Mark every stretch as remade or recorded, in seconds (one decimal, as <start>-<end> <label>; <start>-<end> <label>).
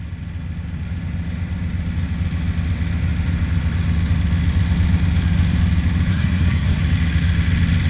0.0-6.1 recorded; 6.1-6.8 remade; 6.8-7.9 recorded